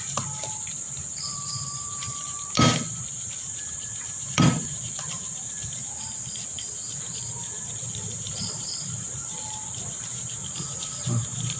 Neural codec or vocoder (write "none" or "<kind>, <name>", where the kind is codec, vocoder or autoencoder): vocoder, BigVGAN v2